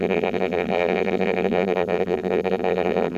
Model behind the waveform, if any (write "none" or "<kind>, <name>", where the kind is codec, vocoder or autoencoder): vocoder, BigVGAN v2